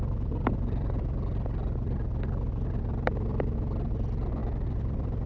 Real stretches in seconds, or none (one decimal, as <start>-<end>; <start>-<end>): 0.0-5.3